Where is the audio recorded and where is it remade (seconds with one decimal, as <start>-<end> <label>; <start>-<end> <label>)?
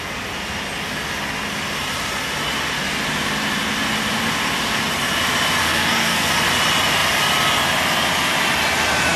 0.0-5.6 recorded; 5.6-6.3 remade; 6.3-9.2 recorded